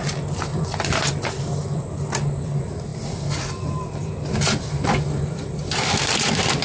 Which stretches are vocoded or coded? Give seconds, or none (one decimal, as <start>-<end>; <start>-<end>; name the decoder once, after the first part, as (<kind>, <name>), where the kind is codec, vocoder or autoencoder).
0.5-1.3 (vocoder, BigVGAN v2); 2.9-5.9